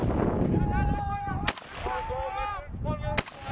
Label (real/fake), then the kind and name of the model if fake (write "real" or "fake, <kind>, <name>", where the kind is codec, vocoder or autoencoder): real